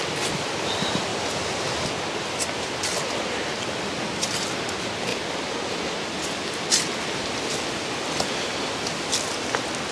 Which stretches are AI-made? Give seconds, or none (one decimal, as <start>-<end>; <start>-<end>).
none